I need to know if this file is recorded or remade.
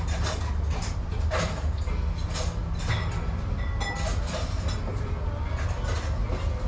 recorded